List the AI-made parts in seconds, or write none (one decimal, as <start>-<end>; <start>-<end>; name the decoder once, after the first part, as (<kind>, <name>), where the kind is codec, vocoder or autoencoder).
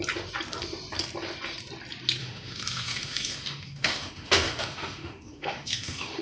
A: 2.2-6.2 (autoencoder, DAC-VAE)